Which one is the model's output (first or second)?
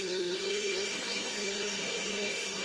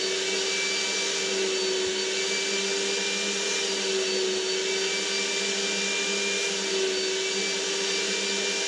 first